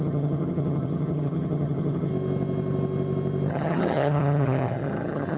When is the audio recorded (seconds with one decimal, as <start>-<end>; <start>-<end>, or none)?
2.1-3.5